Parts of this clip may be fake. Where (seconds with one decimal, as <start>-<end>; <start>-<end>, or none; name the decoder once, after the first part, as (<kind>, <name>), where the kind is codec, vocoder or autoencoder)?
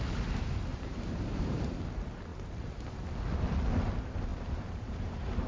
0.7-1.8 (vocoder, BigVGAN v2); 2.3-3.0; 4.3-5.5